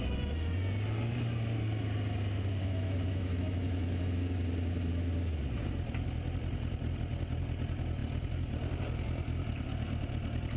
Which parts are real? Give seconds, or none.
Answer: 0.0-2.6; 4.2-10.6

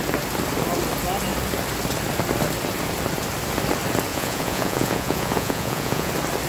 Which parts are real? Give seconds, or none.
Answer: 0.0-4.1; 6.1-6.5

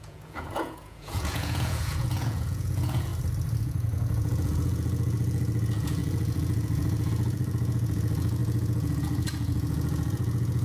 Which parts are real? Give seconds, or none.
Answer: 3.1-3.6

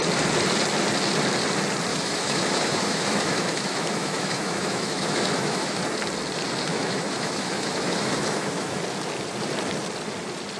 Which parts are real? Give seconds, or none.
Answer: 0.0-1.9; 5.8-6.7; 8.8-10.6